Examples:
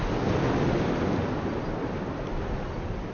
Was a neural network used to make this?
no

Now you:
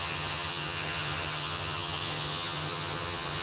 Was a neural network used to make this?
yes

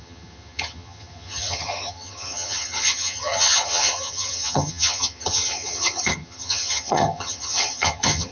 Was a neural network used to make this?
yes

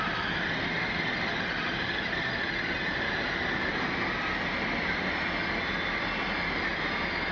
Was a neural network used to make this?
no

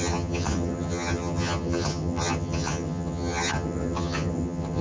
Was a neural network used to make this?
yes